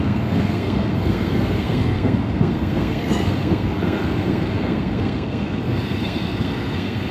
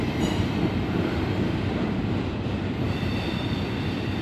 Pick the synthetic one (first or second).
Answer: first